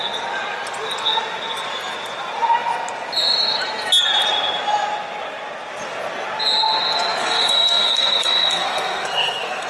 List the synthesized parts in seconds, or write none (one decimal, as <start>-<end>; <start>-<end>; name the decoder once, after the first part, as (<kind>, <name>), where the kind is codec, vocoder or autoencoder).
7.2-9.7 (codec, SNAC)